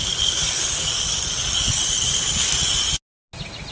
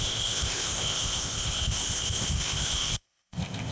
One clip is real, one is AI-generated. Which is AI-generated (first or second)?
second